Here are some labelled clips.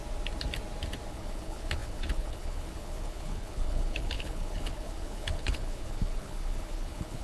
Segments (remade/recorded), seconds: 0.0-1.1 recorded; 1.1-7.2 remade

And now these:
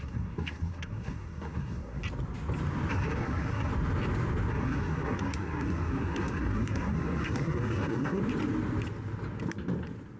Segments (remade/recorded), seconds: 0.0-2.0 remade; 2.0-2.9 recorded; 2.9-3.7 remade; 3.7-4.5 recorded; 4.5-8.2 remade; 8.2-10.2 recorded

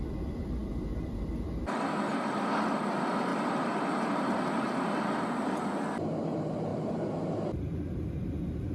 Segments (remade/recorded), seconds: 0.0-3.3 recorded; 3.3-5.8 remade; 5.8-6.7 recorded; 6.7-8.2 remade; 8.2-8.7 recorded

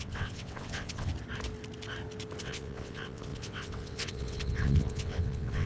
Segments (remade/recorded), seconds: 0.0-1.1 remade; 1.1-2.4 recorded; 2.4-5.7 remade

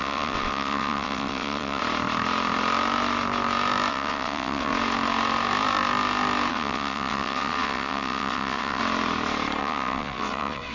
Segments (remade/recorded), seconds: 0.0-1.8 remade; 1.8-3.9 recorded; 3.9-4.7 remade; 4.7-6.5 recorded; 6.5-8.8 remade; 8.8-9.6 recorded; 9.6-10.7 remade

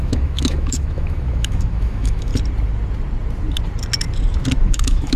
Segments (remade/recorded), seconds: 0.0-2.3 remade; 2.3-4.7 recorded; 4.7-5.2 remade